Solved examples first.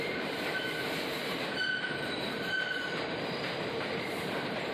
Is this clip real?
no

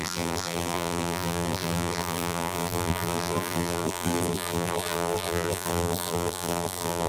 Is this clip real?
no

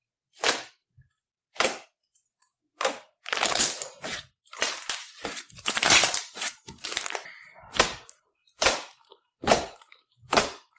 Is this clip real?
no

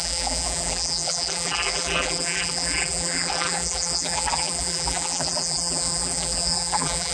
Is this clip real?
no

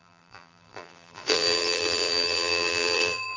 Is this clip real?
no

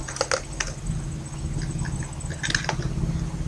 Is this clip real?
yes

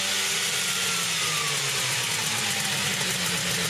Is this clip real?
yes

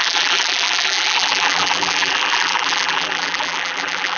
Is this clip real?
no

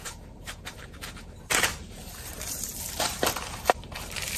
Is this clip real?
no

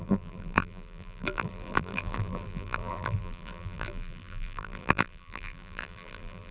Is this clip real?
no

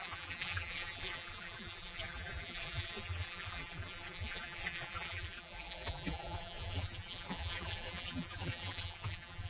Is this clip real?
no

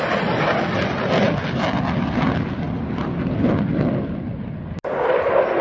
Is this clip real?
yes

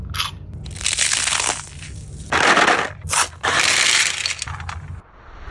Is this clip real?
yes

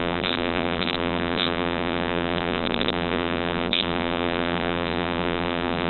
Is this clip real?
no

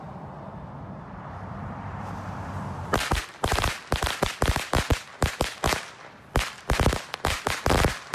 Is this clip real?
no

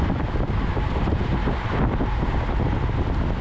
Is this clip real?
no